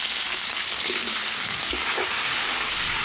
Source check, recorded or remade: remade